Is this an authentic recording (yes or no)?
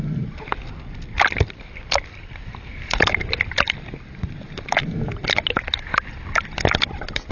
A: yes